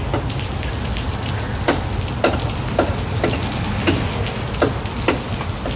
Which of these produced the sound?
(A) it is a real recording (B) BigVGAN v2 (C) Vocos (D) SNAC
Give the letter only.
A